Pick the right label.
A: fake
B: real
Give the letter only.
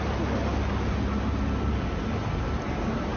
B